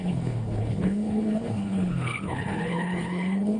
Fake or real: fake